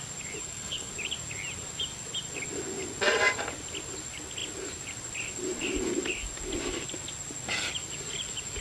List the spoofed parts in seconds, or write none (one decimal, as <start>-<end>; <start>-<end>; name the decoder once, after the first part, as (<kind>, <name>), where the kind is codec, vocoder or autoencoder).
0.4-0.9 (codec, HILCodec)